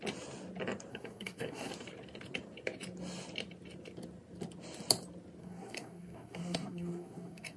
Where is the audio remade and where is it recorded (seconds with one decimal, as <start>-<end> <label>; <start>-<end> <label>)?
0.0-0.9 recorded; 0.9-1.7 remade; 1.7-5.4 recorded; 5.4-7.6 remade